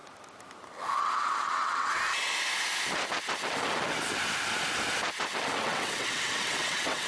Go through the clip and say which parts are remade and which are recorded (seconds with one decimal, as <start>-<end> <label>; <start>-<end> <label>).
0.0-1.0 recorded; 1.0-1.9 remade; 1.9-5.6 recorded; 5.6-7.1 remade